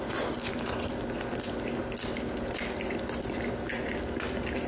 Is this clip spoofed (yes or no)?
no